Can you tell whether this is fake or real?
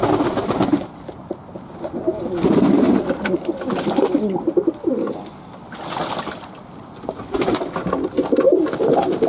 real